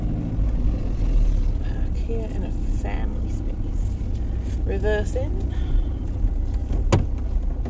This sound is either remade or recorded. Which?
recorded